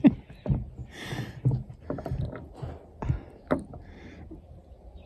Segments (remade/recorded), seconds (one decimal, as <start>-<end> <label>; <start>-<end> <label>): 0.0-5.1 recorded